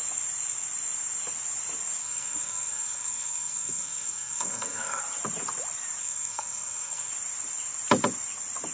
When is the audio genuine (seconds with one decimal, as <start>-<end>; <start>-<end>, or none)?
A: 0.0-2.0; 5.0-6.0; 7.1-8.7